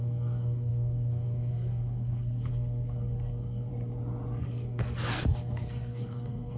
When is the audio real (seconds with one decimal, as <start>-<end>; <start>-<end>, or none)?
3.7-4.4